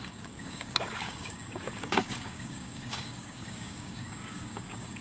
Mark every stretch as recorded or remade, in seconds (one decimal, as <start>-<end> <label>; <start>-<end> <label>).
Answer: 0.0-5.0 remade